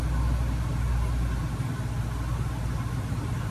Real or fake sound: real